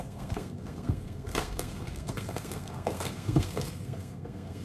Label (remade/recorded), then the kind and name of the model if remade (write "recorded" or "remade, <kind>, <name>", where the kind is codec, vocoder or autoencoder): remade, codec, SNAC